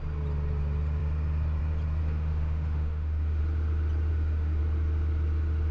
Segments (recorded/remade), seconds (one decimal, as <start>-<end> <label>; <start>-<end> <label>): 0.0-2.0 recorded; 2.0-3.4 remade; 3.4-4.1 recorded; 4.1-4.6 remade; 4.6-5.7 recorded